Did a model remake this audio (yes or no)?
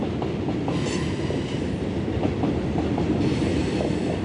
no